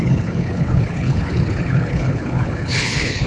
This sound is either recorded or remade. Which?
remade